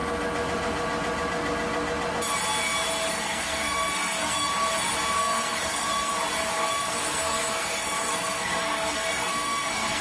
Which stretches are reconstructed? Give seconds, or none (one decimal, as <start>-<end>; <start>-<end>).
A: 3.1-4.5; 5.2-6.1; 6.6-10.0